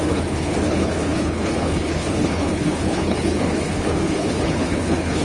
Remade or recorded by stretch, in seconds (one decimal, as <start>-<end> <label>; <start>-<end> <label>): 0.0-5.2 remade